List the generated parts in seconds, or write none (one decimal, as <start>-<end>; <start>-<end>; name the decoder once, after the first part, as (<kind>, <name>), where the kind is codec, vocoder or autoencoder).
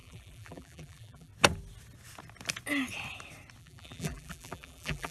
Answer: 0.0-1.3 (vocoder, BigVGAN v2); 3.6-5.1